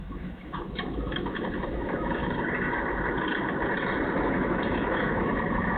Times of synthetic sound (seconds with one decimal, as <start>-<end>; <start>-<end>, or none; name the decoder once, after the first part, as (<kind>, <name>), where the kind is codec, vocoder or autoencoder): 0.0-2.2 (autoencoder, DAC-VAE); 4.2-5.8